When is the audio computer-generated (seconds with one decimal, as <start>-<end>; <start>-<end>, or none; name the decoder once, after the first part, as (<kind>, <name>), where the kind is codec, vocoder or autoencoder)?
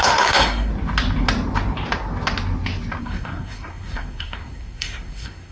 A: 0.0-0.7 (codec, SNAC); 3.0-5.5